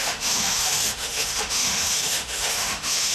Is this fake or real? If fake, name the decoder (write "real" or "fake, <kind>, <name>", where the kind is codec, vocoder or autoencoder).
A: fake, autoencoder, DAC-VAE